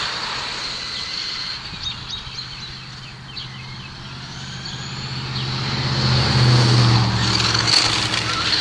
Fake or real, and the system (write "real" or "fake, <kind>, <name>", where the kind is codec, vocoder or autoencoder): real